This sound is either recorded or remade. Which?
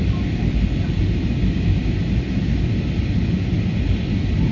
recorded